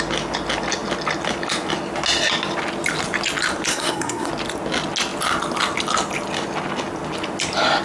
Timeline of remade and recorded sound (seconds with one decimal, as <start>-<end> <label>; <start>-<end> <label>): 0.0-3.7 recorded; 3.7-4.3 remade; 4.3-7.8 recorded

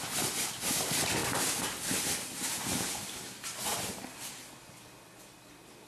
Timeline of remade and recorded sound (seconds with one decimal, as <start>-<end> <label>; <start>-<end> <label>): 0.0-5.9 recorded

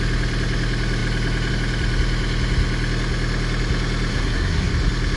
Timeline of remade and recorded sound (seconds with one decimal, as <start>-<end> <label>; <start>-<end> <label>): 0.0-4.1 recorded; 4.1-4.7 remade; 4.7-5.2 recorded

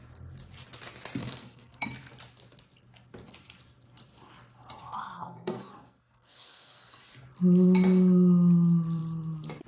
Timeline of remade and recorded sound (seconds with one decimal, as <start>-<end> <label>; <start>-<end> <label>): 0.0-1.2 recorded; 1.2-1.9 remade; 1.9-4.8 recorded; 4.8-7.0 remade; 7.0-9.7 recorded